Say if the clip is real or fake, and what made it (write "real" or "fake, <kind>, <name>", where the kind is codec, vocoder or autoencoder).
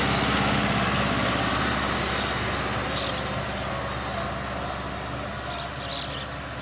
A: real